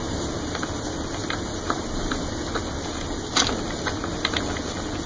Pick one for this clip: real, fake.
real